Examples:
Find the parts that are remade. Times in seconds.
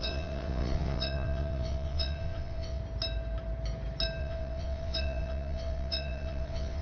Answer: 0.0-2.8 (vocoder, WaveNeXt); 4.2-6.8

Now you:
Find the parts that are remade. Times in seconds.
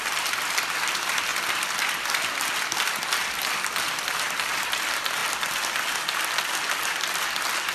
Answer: 0.0-1.3 (vocoder, BigVGAN v2); 4.1-5.2; 6.1-7.7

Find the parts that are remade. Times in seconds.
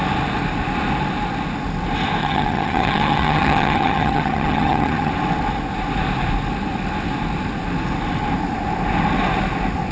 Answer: 2.2-5.1 (vocoder, HiFi-GAN)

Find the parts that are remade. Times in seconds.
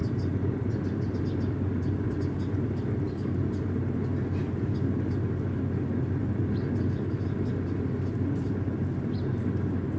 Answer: none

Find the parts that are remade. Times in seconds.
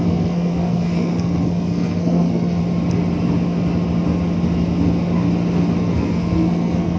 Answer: 0.0-2.6 (codec, SNAC); 5.8-7.0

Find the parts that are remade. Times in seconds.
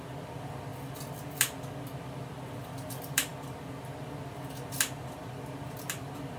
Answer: none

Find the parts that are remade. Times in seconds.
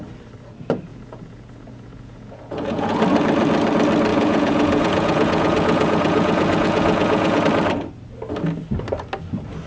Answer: 0.9-3.0 (vocoder, Vocos); 4.1-7.4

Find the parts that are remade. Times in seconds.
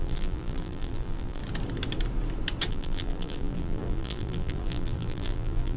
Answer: 0.0-1.4 (vocoder, BigVGAN v2); 2.7-5.8